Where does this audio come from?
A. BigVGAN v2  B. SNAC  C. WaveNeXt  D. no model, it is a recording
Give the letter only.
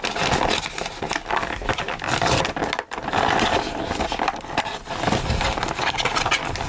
D